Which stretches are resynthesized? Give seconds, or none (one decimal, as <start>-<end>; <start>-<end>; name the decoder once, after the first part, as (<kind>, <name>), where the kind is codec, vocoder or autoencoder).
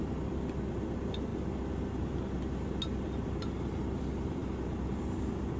none